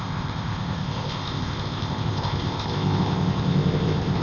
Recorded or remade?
remade